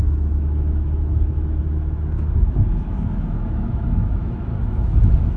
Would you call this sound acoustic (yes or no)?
no